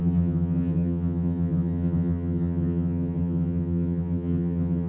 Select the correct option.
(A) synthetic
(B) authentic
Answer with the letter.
A